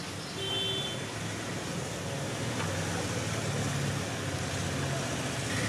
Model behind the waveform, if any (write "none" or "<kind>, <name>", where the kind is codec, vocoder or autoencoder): none